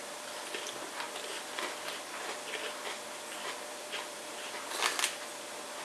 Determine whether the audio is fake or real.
real